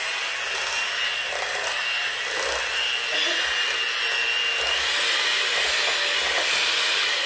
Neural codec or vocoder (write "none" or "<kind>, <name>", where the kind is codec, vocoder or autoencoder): none